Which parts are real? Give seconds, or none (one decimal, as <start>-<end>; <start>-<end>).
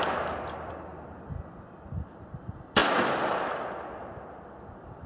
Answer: 0.0-5.1